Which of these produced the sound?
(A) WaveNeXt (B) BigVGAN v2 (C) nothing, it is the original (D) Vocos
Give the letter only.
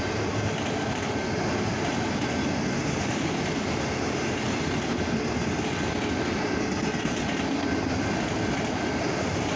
C